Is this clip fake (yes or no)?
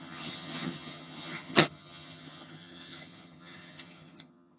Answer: yes